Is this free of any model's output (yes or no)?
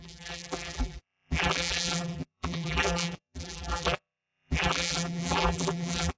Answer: no